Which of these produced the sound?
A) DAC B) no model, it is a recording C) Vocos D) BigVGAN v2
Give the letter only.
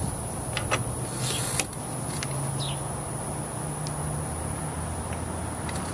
B